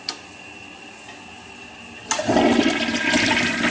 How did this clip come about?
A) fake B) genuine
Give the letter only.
B